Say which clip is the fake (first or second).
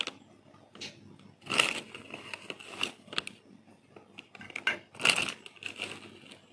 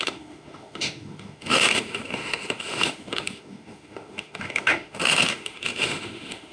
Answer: second